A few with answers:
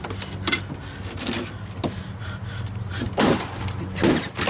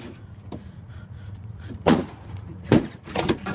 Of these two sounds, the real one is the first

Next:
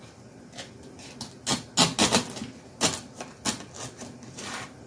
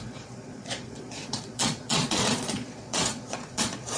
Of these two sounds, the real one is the first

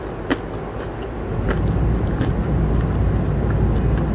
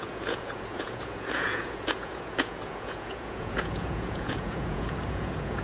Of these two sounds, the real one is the first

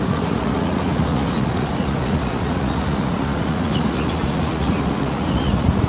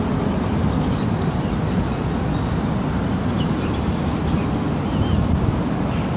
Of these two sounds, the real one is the second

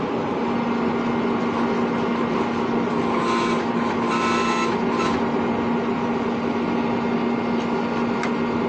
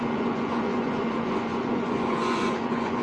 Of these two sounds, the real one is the first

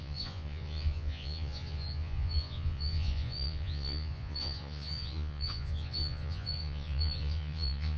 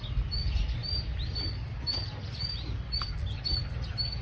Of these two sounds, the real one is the second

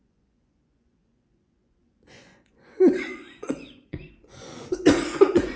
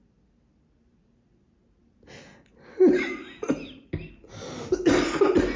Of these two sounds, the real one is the second